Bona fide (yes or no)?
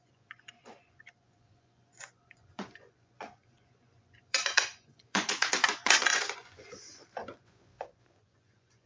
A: no